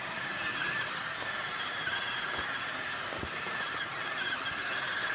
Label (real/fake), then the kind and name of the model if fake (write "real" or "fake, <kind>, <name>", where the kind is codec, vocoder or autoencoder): real